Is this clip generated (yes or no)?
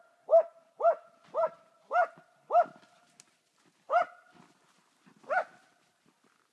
no